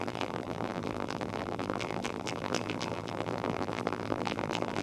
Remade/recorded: remade